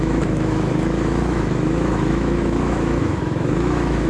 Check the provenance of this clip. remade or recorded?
remade